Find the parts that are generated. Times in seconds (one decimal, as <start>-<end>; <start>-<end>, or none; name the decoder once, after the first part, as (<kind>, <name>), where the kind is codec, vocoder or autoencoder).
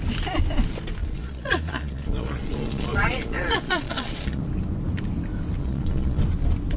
1.0-4.4 (vocoder, Vocos); 5.6-6.2